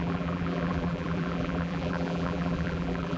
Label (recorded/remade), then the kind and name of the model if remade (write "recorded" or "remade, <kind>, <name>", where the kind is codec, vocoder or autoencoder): remade, vocoder, BigVGAN v2